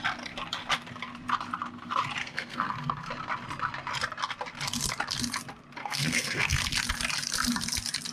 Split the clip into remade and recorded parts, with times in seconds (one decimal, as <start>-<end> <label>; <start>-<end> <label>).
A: 0.0-2.2 recorded; 2.2-3.1 remade; 3.1-5.8 recorded; 5.8-6.6 remade; 6.6-8.1 recorded